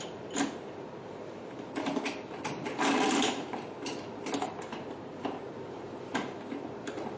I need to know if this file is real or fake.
fake